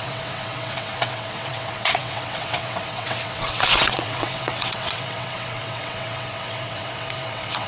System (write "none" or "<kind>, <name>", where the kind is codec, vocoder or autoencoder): vocoder, WaveNeXt